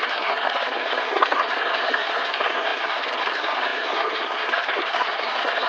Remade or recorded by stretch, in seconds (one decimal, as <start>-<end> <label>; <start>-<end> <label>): 0.0-5.7 remade